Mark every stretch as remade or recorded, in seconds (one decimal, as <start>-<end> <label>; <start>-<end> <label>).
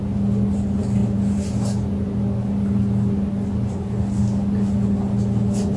0.0-5.8 recorded